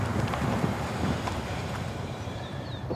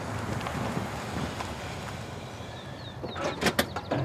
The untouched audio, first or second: second